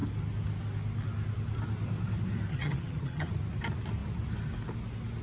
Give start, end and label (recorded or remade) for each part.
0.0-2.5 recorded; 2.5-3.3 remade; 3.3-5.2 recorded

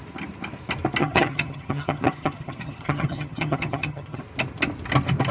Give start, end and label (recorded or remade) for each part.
0.0-1.0 recorded; 1.0-4.2 remade; 4.2-5.3 recorded

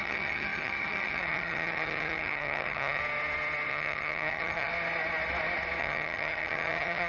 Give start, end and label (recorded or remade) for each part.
0.0-3.0 remade; 3.0-3.7 recorded; 3.7-4.7 remade; 4.7-5.8 recorded; 5.8-7.1 remade

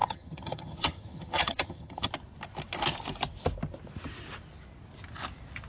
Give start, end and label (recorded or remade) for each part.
0.0-2.1 remade; 2.1-5.7 recorded

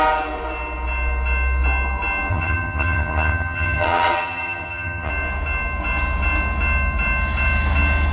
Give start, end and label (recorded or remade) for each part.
0.0-2.3 recorded; 2.3-5.1 remade; 5.1-8.1 recorded

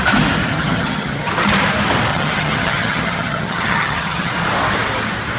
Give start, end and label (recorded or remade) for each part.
0.0-0.5 recorded; 0.5-1.3 remade; 1.3-2.1 recorded; 2.1-4.3 remade; 4.3-5.4 recorded

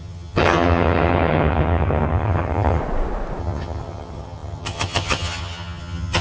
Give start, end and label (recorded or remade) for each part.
0.0-2.8 remade; 2.8-3.4 recorded; 3.4-6.2 remade

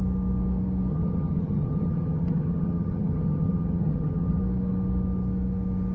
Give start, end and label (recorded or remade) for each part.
0.0-0.9 recorded; 0.9-4.4 remade; 4.4-5.9 recorded